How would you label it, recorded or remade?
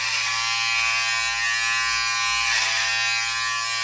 recorded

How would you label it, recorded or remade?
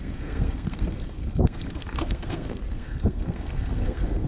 remade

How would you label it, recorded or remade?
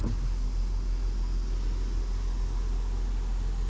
recorded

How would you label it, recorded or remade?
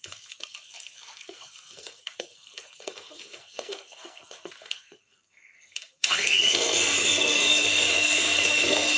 remade